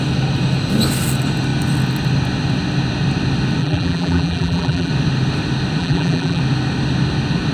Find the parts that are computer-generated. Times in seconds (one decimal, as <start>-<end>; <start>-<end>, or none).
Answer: 3.6-4.9; 5.8-6.4